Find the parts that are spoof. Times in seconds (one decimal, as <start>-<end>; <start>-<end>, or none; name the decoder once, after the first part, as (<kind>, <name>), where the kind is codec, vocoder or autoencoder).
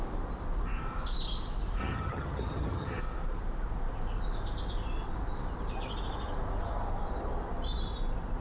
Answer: 1.8-3.0 (vocoder, HiFi-GAN)